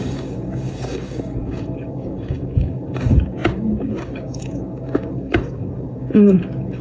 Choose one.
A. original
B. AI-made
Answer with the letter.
B